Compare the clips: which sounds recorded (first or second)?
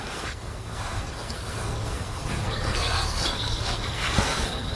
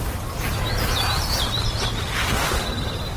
second